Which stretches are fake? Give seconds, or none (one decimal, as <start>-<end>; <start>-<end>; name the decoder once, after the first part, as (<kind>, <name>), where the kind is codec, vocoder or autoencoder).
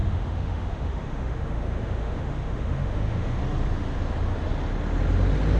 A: 0.0-3.4 (autoencoder, DAC-VAE)